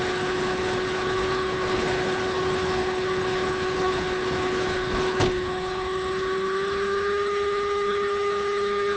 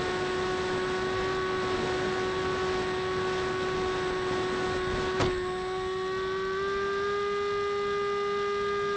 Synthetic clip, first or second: first